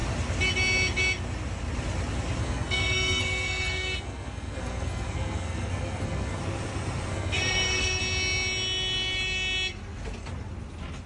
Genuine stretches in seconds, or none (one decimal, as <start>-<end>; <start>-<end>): 0.0-2.4; 6.4-7.1; 8.0-11.1